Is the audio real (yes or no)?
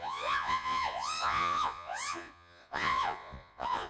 no